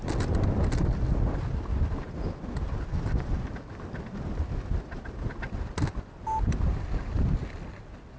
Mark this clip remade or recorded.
recorded